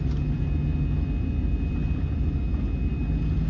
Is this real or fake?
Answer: real